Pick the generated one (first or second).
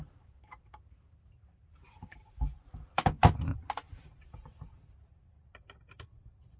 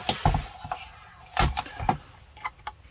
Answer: first